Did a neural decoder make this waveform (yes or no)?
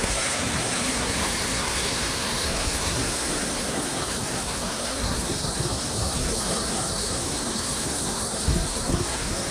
yes